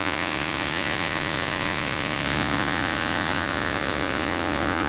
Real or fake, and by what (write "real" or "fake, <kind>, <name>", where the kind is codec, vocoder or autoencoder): fake, vocoder, Vocos